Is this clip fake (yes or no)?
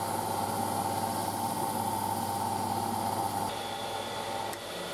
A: no